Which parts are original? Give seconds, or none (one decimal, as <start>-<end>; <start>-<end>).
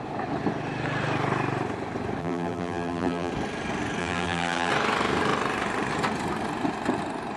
0.0-2.2; 3.3-4.0; 4.7-7.4